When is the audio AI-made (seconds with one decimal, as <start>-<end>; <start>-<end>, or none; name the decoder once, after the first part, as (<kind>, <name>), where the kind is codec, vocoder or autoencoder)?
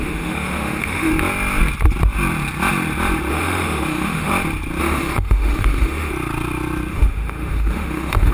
0.0-1.1 (autoencoder, DAC-VAE); 3.3-4.3; 4.8-6.1; 6.9-8.3